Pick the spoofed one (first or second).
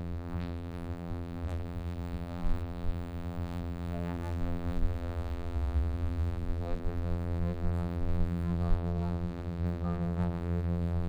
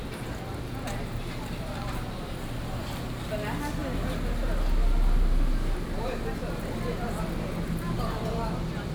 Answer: first